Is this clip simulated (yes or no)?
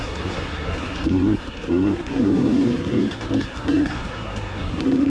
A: yes